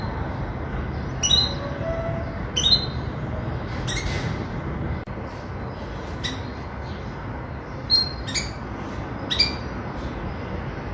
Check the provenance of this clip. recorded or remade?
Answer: recorded